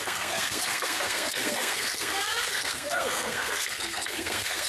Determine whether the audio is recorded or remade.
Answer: remade